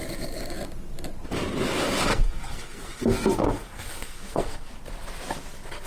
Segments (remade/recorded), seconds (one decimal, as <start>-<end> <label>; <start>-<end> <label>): 0.0-2.1 recorded; 2.1-4.7 remade; 4.7-5.9 recorded